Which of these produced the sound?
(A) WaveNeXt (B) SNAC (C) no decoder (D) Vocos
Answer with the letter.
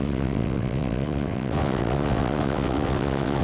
A